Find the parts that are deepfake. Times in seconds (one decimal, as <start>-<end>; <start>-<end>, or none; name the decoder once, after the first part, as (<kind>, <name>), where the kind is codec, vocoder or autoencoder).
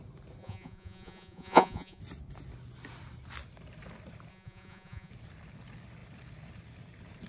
0.4-2.0 (vocoder, Vocos); 4.3-5.1